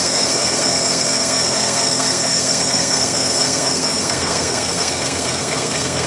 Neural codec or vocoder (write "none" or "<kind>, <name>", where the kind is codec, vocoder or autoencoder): codec, SNAC